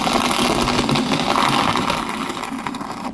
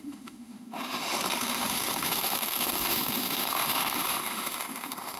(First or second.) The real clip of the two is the first